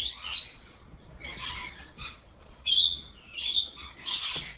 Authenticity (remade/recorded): remade